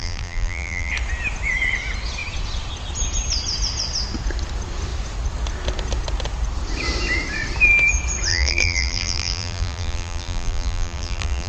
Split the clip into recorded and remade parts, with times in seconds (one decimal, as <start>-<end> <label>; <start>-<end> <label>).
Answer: 0.0-0.9 remade; 0.9-8.3 recorded; 8.3-11.5 remade